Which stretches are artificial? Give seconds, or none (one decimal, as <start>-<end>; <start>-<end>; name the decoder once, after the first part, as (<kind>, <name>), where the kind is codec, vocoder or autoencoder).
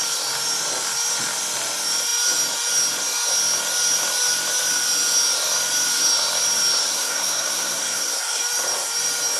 6.9-8.4 (codec, SNAC)